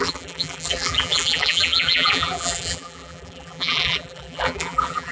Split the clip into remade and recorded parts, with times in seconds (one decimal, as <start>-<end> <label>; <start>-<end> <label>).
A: 0.0-5.1 remade